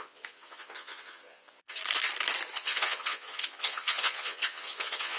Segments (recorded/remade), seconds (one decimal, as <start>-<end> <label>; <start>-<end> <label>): 0.0-1.8 remade; 1.8-2.5 recorded; 2.5-5.2 remade